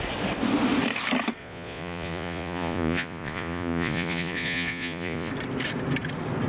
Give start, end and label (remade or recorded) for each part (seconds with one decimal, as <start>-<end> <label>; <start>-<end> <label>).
0.0-1.4 recorded; 1.4-5.3 remade; 5.3-6.5 recorded